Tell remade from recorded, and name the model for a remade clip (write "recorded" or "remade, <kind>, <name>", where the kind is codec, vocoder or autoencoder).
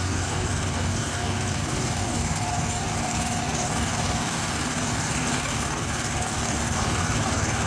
remade, codec, DAC